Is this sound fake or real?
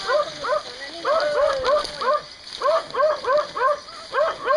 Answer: real